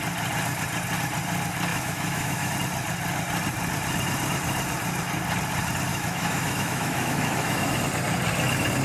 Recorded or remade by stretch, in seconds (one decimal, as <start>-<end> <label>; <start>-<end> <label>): 0.0-1.7 recorded; 1.7-2.5 remade; 2.5-5.9 recorded; 5.9-7.8 remade; 7.8-8.8 recorded